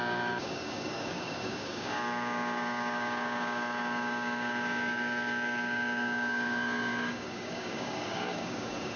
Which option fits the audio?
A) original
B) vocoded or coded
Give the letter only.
B